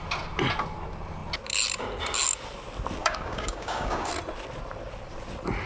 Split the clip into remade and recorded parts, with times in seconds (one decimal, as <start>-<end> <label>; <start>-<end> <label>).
0.0-3.0 recorded; 3.0-4.1 remade; 4.1-5.7 recorded